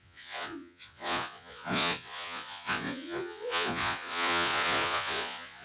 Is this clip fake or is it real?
fake